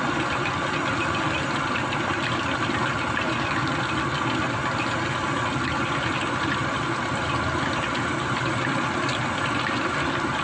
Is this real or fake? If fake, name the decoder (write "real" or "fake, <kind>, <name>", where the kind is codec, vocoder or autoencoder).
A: real